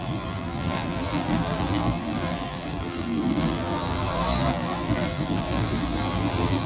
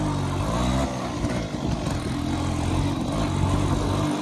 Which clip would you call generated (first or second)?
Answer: first